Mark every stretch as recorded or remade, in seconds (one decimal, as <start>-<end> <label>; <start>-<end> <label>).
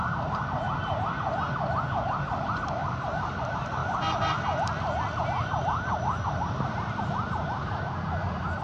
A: 0.0-3.8 remade; 3.8-5.2 recorded; 5.2-8.6 remade